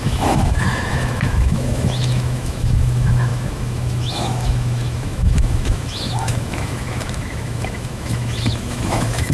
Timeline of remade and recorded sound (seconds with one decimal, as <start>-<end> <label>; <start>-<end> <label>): 0.0-9.3 remade